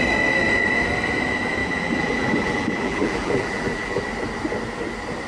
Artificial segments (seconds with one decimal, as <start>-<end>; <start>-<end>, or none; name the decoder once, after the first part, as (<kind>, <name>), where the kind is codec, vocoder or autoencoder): 1.6-4.0 (vocoder, BigVGAN v2)